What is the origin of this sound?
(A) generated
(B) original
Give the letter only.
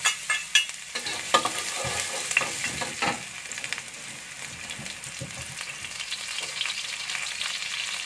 B